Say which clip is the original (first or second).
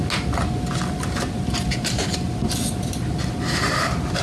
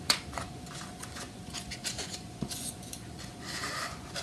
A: first